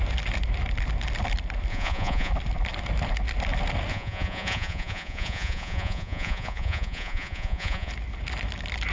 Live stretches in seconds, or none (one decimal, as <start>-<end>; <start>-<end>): 0.0-1.7; 2.3-3.9; 7.9-8.9